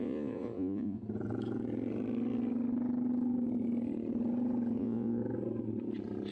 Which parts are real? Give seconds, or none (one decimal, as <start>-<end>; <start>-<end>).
1.0-4.8; 5.2-6.3